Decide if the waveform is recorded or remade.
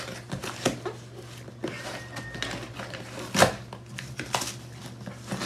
recorded